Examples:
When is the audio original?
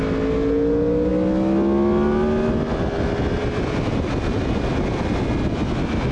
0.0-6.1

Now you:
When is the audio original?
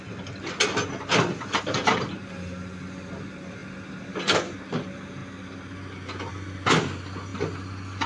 0.0-8.1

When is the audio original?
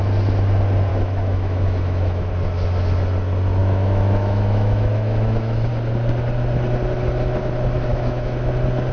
0.0-0.9; 2.3-3.6; 5.7-7.9; 8.5-8.9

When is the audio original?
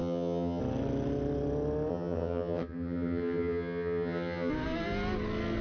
0.6-1.9; 4.5-5.6